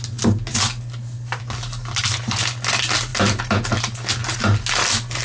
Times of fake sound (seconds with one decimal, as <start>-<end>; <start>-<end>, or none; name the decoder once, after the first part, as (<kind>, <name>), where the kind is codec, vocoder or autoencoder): none